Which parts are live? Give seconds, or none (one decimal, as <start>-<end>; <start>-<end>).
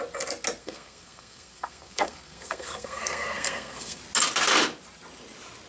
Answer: 0.0-0.6; 4.0-5.7